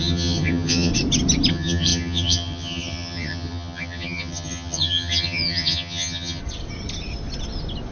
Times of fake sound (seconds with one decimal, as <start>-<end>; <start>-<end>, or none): 0.0-0.9; 1.5-6.4